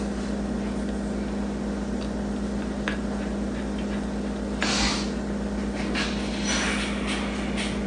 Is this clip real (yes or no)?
yes